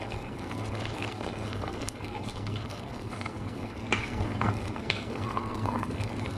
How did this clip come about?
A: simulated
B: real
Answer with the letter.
A